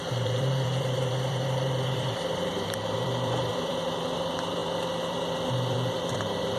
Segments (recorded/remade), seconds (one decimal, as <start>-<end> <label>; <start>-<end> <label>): 0.0-6.6 remade